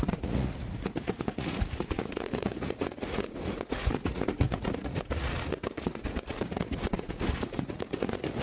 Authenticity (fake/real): fake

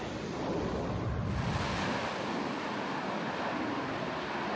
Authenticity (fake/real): real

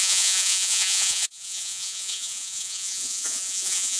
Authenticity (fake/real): fake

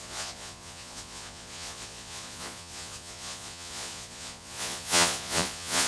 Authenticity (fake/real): fake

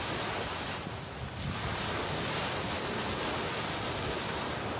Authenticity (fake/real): real